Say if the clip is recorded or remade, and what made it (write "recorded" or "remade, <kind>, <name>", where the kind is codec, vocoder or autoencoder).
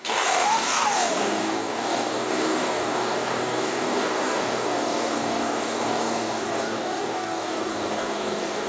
remade, codec, DAC